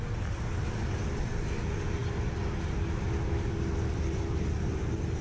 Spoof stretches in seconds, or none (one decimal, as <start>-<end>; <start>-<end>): none